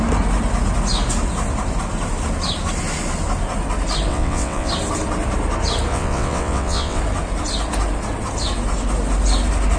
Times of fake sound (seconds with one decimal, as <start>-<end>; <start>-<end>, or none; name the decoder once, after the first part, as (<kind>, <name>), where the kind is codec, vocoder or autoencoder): 4.1-4.7 (vocoder, WaveNeXt); 5.9-7.0